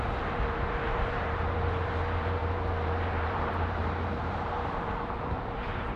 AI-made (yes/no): yes